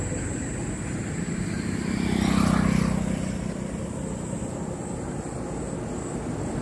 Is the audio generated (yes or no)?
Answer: no